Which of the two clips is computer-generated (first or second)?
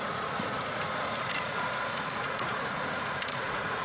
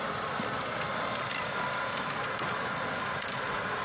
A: first